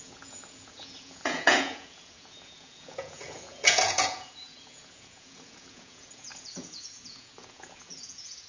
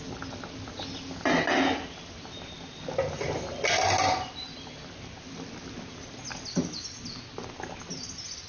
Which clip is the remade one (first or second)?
first